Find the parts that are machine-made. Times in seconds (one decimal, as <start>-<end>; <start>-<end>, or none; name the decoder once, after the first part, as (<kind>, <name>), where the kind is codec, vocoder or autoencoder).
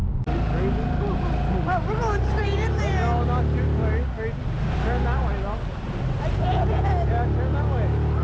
6.5-7.1 (vocoder, Vocos)